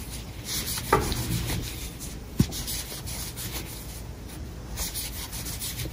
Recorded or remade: recorded